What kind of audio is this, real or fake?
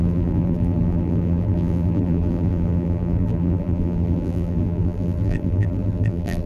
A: fake